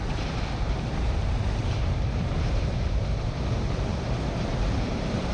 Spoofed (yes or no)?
yes